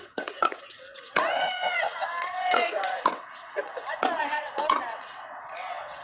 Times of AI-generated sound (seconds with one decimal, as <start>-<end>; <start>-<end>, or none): 0.0-6.0